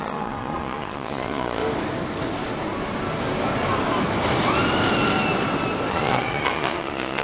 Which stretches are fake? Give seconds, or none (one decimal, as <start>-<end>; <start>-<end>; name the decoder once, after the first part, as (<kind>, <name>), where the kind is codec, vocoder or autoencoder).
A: 0.0-1.6 (vocoder, Vocos); 5.9-7.2